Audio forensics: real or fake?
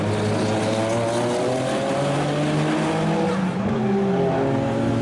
real